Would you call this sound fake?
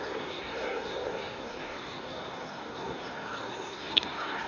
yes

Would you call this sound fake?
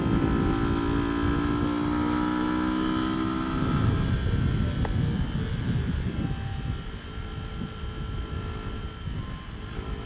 no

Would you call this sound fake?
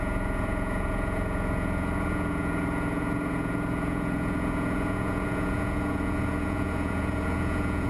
yes